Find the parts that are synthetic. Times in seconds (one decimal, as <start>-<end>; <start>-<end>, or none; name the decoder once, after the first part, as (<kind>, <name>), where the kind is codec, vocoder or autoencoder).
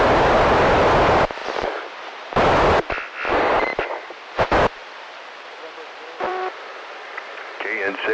0.0-8.1 (vocoder, BigVGAN v2)